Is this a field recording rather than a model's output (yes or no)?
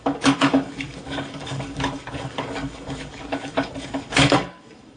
no